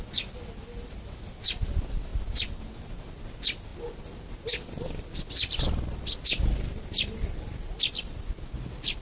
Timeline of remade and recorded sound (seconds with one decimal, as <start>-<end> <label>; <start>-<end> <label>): 0.0-9.0 recorded